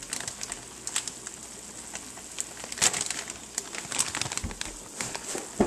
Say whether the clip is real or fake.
real